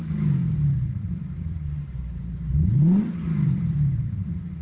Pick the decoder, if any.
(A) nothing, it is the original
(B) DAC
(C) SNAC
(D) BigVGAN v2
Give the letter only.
D